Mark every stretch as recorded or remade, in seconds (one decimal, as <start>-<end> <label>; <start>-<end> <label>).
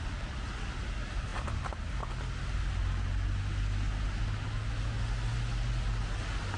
0.0-6.6 recorded